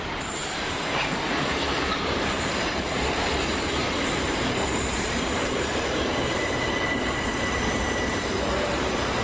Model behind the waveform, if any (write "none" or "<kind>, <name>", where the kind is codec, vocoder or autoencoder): vocoder, BigVGAN v2